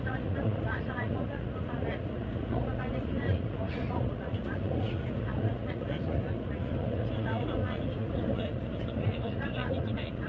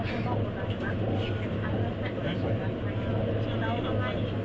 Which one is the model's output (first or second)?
first